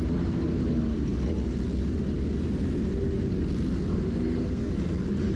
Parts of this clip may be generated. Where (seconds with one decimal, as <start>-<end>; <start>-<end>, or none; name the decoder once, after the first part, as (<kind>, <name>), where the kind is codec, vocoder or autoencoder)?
3.9-4.7 (codec, SNAC)